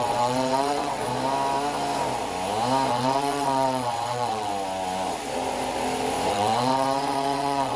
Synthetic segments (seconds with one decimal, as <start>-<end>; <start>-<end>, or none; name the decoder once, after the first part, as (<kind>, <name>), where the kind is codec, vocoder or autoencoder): 0.0-1.1 (vocoder, WaveNeXt); 2.9-4.5; 6.3-7.8